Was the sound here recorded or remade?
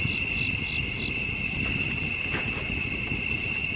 recorded